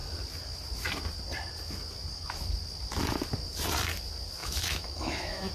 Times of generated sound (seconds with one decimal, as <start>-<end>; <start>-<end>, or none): 4.4-5.5